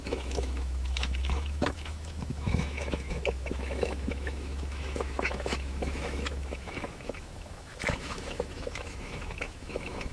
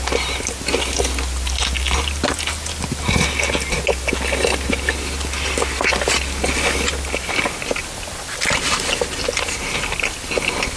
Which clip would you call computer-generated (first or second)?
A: first